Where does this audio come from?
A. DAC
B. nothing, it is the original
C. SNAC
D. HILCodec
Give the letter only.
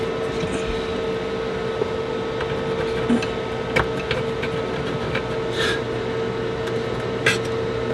B